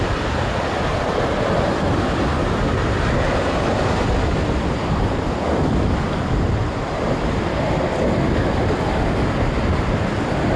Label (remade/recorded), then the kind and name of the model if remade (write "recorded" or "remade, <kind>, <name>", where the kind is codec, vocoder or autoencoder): recorded